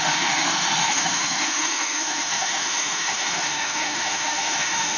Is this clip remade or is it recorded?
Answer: remade